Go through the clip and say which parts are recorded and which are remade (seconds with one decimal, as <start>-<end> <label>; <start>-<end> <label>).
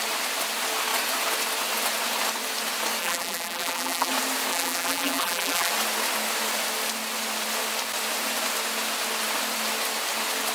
0.0-3.0 recorded; 3.0-4.1 remade; 4.1-4.5 recorded; 4.5-5.7 remade; 5.7-10.5 recorded